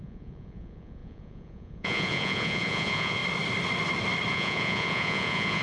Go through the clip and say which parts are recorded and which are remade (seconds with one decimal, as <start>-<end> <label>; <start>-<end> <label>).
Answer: 0.0-3.2 remade; 3.2-4.3 recorded; 4.3-5.6 remade